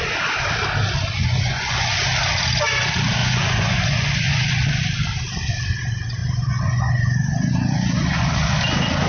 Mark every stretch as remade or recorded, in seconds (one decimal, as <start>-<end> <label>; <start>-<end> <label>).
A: 0.0-1.2 recorded; 1.2-1.9 remade; 1.9-3.2 recorded; 3.2-4.8 remade; 4.8-6.2 recorded; 6.2-8.4 remade; 8.4-9.1 recorded